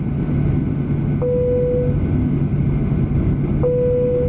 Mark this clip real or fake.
real